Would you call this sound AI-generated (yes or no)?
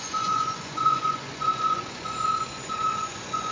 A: yes